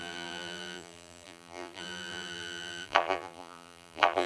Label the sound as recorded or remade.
remade